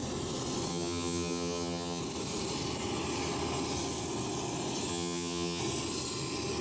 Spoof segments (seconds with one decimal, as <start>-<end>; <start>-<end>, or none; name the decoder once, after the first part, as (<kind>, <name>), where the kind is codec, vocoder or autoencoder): 0.7-2.0 (vocoder, HiFi-GAN); 4.9-5.6